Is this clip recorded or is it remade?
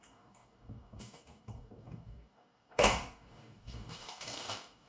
remade